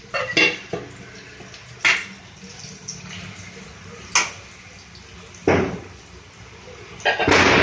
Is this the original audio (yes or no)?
yes